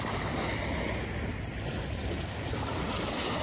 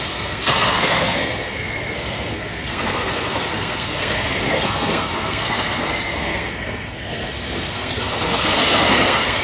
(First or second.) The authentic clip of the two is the first